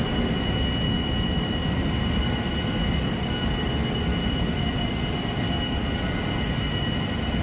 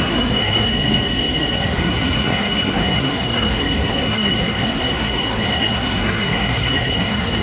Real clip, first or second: first